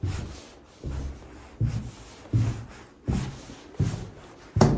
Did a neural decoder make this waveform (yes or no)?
no